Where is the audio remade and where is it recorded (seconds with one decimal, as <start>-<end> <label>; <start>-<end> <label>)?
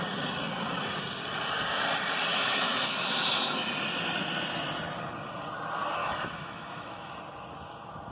0.0-2.3 recorded; 2.3-3.7 remade; 3.7-6.0 recorded; 6.0-7.1 remade; 7.1-8.1 recorded